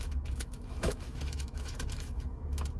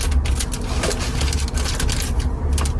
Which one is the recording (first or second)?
second